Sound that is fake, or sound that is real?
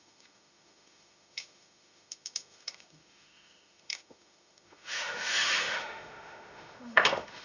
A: fake